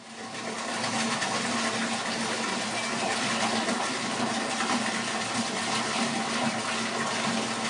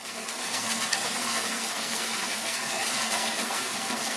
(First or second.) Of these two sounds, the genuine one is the first